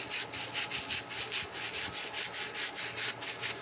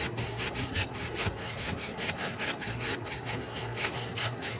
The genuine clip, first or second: first